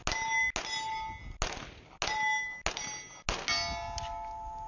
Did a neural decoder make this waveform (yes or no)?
no